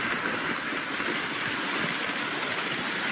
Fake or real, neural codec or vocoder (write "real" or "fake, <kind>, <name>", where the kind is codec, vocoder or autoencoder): real